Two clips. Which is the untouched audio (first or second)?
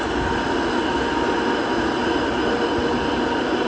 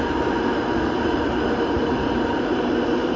first